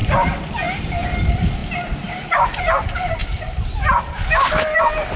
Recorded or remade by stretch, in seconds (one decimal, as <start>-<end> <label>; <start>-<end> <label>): 0.0-5.2 recorded